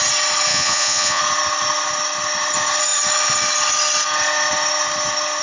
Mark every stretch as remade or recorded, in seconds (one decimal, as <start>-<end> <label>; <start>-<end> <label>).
0.0-0.5 recorded; 0.5-1.2 remade; 1.2-5.4 recorded